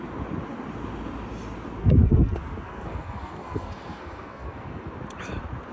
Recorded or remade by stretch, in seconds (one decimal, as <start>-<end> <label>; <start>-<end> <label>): 0.0-1.8 recorded; 1.8-4.9 remade; 4.9-5.7 recorded